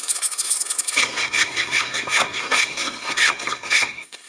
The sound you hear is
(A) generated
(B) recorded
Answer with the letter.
A